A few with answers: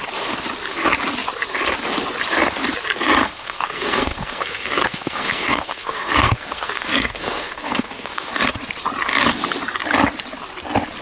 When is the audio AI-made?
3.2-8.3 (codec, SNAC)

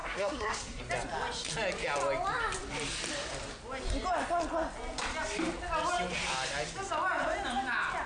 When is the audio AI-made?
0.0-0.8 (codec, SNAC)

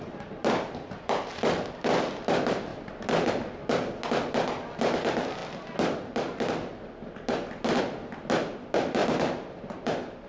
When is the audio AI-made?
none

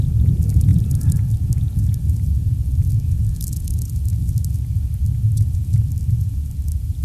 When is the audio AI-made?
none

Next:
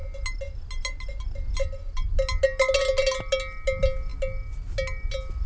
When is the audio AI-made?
none